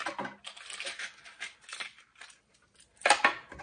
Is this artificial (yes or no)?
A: no